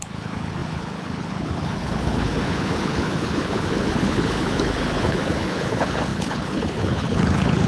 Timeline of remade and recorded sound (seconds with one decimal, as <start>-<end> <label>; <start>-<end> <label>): 0.0-7.7 remade